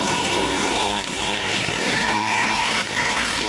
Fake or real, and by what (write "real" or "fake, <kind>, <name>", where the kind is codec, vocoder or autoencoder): fake, codec, SNAC